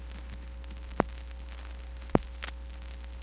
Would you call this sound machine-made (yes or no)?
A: no